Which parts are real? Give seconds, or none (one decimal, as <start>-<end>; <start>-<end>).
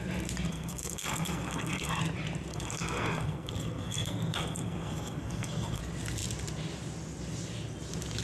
0.0-0.5; 2.0-2.5; 5.8-8.2